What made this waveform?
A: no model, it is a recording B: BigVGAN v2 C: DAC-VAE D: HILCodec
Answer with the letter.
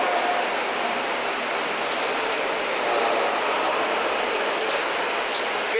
B